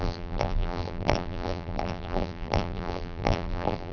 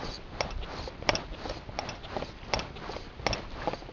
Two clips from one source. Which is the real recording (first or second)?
second